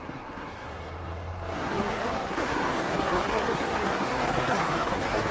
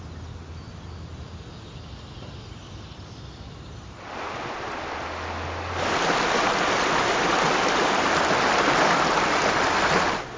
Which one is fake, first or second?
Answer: first